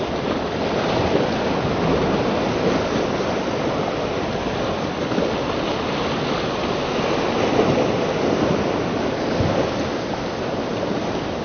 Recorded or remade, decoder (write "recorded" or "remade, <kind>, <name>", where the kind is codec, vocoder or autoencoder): recorded